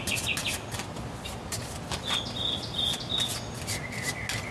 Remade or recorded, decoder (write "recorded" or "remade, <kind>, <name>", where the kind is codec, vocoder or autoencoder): recorded